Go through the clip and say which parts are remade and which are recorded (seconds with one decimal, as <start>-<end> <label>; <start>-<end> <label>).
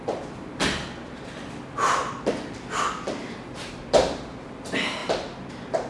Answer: 0.0-5.9 recorded